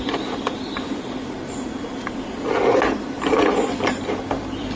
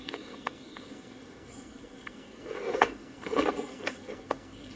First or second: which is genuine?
first